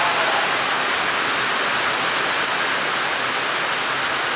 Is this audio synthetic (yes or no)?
no